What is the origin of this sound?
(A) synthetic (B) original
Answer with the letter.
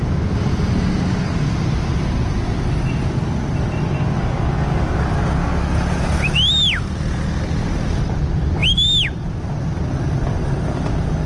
B